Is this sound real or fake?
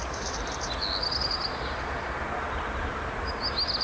real